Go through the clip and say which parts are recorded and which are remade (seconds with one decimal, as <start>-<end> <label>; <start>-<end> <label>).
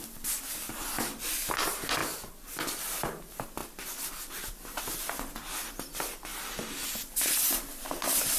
0.0-8.4 recorded